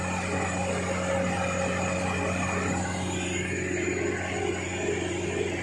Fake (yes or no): no